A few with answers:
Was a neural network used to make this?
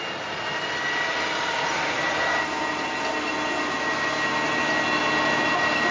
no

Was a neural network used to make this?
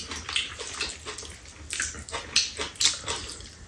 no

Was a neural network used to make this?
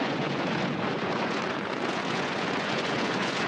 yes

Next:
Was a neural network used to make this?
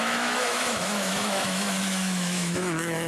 yes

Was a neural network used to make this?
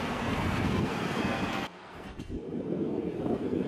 yes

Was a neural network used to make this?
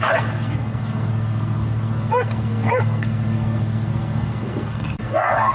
yes